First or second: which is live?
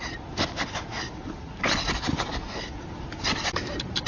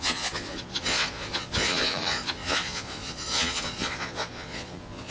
first